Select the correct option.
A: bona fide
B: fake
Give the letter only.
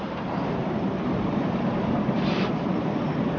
B